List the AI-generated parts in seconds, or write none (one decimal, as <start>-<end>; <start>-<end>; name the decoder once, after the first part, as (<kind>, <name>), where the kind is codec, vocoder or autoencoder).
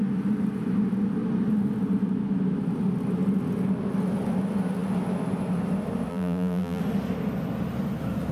6.1-6.8 (vocoder, BigVGAN v2)